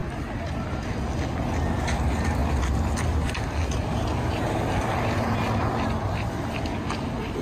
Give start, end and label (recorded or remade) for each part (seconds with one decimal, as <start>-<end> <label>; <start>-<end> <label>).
0.0-7.4 recorded